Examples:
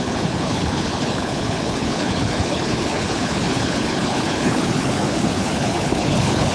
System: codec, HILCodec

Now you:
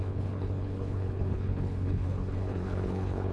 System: codec, HILCodec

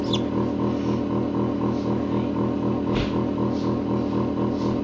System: none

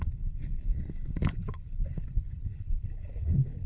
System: codec, HILCodec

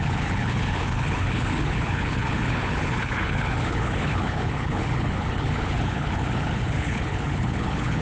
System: codec, HILCodec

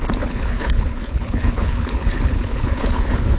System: codec, HILCodec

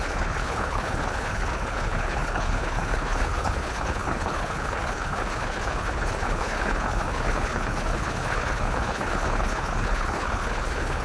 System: codec, HILCodec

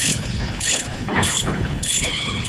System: codec, HILCodec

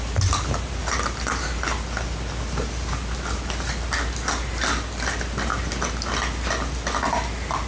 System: none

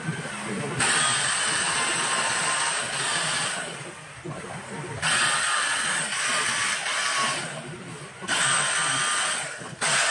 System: none